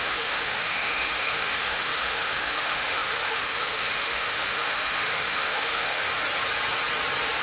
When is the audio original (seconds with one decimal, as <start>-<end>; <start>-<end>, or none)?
6.2-7.4